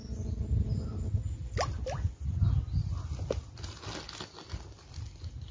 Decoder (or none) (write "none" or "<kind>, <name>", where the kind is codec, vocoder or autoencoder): none